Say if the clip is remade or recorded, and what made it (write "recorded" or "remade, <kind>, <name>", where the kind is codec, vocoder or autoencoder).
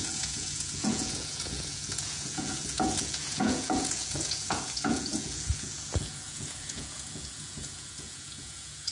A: remade, vocoder, Vocos